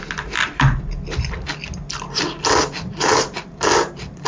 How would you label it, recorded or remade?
recorded